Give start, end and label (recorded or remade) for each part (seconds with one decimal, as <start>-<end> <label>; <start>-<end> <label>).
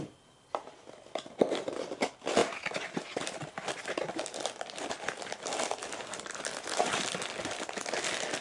0.0-8.4 recorded